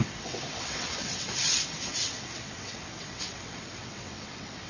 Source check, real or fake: fake